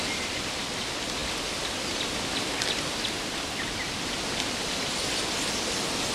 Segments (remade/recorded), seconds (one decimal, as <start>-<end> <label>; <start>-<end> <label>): 0.0-6.1 recorded